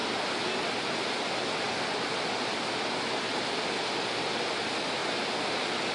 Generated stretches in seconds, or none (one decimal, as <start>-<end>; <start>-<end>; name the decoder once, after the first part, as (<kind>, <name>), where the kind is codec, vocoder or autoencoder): none